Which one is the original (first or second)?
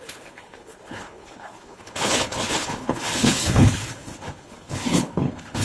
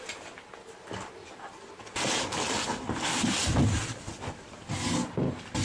second